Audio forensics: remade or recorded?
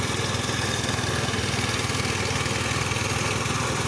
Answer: recorded